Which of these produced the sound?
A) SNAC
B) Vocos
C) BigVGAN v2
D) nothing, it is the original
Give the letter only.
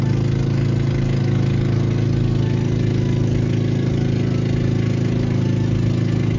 D